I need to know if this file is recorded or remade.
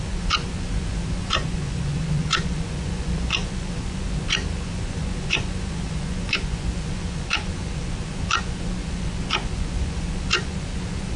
remade